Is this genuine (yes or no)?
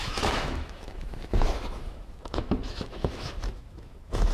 no